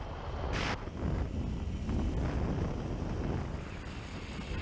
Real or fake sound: real